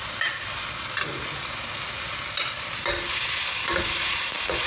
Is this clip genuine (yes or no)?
yes